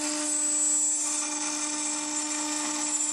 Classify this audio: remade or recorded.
recorded